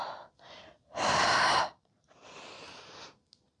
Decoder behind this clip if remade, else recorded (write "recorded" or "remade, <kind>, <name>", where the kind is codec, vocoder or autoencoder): recorded